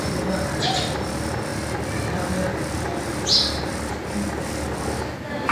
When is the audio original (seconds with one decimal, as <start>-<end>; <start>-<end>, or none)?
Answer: 0.0-5.5

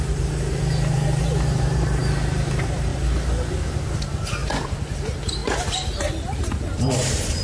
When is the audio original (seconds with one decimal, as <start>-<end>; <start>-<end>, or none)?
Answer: 2.9-3.5; 4.4-5.0; 5.4-6.1

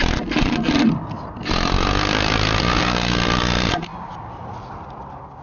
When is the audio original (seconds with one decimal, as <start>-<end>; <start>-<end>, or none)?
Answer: 0.0-5.4

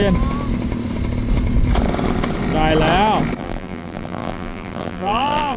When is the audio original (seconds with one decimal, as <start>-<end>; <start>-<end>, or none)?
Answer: 0.0-3.4